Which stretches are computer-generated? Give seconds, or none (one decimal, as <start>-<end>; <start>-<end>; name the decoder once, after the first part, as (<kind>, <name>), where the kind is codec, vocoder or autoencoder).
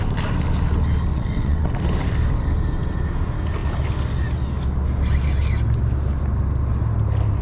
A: 1.1-1.8 (vocoder, WaveNeXt)